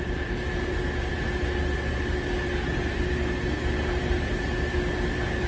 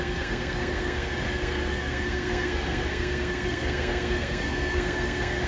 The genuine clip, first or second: first